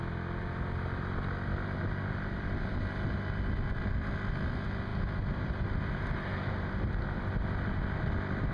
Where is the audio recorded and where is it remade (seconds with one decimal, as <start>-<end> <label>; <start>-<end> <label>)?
0.0-8.5 recorded

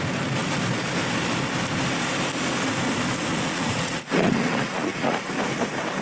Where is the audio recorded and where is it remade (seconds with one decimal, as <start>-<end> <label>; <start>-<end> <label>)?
0.0-3.3 recorded; 3.3-5.3 remade; 5.3-6.0 recorded

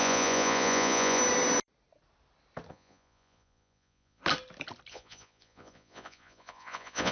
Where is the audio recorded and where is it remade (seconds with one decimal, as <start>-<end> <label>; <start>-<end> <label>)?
0.0-1.2 remade; 1.2-2.7 recorded; 2.7-4.2 remade; 4.2-4.9 recorded; 4.9-7.1 remade

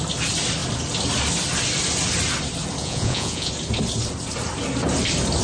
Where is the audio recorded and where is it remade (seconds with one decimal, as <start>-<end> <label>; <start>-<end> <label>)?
0.0-2.8 recorded; 2.8-3.5 remade; 3.5-5.4 recorded